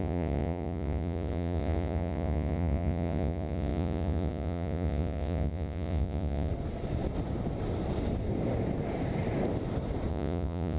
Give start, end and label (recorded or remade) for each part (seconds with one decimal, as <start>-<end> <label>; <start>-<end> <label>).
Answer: 0.0-6.5 remade; 6.5-10.1 recorded; 10.1-10.8 remade